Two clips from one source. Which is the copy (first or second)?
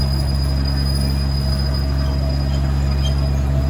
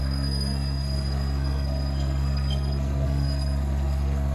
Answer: second